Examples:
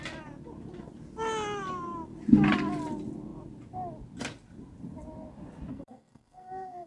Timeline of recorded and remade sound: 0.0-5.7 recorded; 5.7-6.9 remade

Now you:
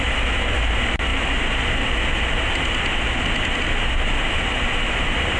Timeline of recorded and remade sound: 0.0-5.4 recorded

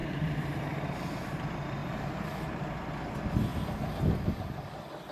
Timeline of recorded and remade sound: 0.0-1.4 remade; 1.4-1.8 recorded; 1.8-2.9 remade; 2.9-5.1 recorded